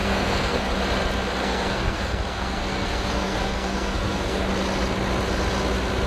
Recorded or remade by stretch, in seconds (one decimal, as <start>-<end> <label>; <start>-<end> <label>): 0.0-0.7 remade; 0.7-1.4 recorded; 1.4-4.5 remade; 4.5-6.1 recorded